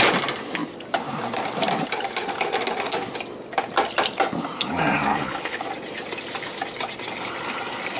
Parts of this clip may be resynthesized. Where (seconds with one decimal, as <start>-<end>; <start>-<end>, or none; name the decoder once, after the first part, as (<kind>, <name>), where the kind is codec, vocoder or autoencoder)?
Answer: 5.1-5.6 (codec, HILCodec)